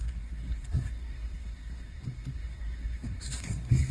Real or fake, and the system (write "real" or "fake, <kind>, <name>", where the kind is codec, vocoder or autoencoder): fake, codec, SNAC